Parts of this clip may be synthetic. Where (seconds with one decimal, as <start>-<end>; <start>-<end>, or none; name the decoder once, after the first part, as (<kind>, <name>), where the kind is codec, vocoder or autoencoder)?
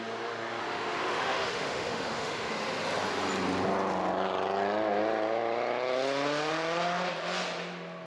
0.6-2.5 (autoencoder, DAC-VAE)